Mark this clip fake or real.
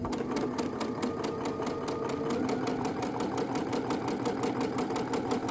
real